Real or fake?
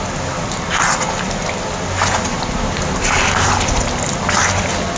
real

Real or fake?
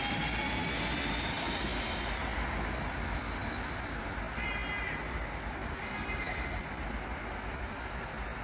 real